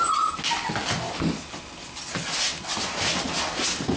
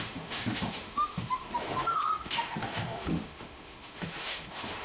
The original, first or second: first